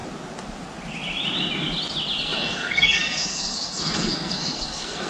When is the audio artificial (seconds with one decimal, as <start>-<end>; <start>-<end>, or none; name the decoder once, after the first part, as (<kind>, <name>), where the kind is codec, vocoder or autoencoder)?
2.2-5.1 (codec, SNAC)

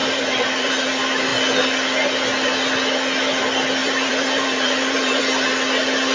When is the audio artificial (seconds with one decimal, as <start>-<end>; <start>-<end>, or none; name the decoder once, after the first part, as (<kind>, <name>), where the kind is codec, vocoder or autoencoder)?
0.0-0.7 (vocoder, BigVGAN v2); 3.8-5.2

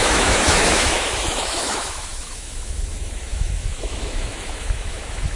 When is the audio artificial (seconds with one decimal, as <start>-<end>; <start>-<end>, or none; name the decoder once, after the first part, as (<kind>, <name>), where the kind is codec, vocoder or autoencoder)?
0.0-5.3 (autoencoder, DAC-VAE)